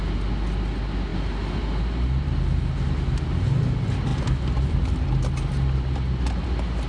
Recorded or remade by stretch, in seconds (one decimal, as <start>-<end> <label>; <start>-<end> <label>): 0.0-6.9 recorded